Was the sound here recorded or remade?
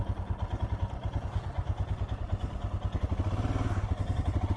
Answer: recorded